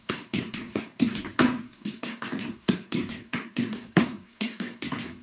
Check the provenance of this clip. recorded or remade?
remade